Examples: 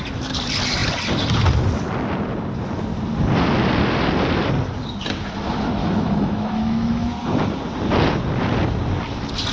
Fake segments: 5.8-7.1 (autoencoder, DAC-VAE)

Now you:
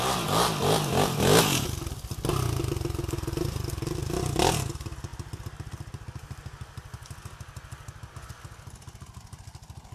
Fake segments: none

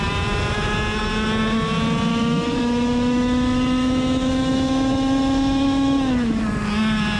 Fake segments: 2.1-6.4 (autoencoder, DAC-VAE)

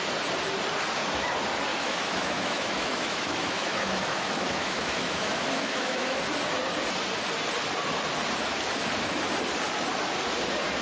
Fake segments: 1.7-6.2 (autoencoder, DAC-VAE)

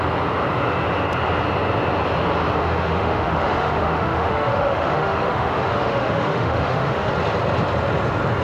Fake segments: 2.6-7.1 (autoencoder, DAC-VAE)

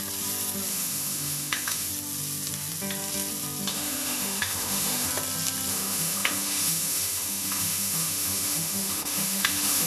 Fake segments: 0.7-1.9 (autoencoder, DAC-VAE); 3.7-5.1; 5.7-9.9

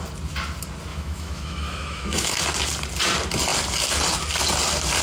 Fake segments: 0.9-2.4 (autoencoder, DAC-VAE)